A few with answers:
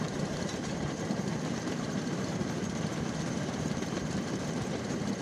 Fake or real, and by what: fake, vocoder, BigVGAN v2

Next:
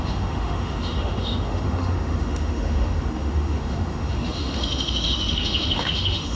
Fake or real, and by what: fake, autoencoder, DAC-VAE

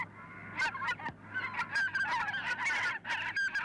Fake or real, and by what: real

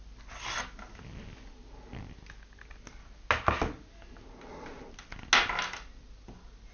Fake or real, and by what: real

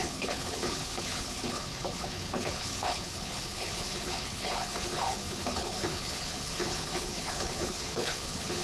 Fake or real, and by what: fake, codec, HILCodec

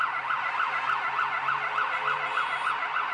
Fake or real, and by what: real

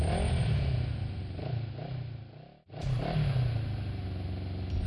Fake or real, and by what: real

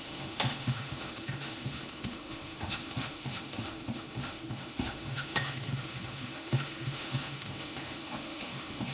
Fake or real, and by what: fake, autoencoder, DAC-VAE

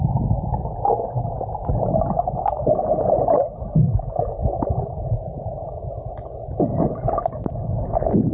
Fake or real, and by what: real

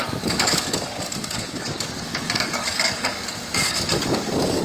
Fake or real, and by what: fake, codec, DAC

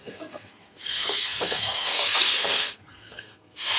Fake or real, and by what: fake, codec, SNAC